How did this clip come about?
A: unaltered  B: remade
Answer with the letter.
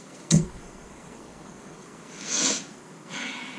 B